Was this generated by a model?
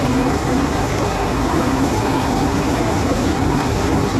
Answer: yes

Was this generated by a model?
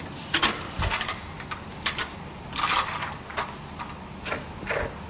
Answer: no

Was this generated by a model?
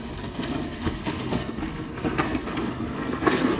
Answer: yes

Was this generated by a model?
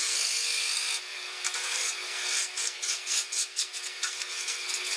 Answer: yes